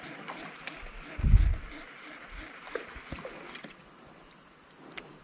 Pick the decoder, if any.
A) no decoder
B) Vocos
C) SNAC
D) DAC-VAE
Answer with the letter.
A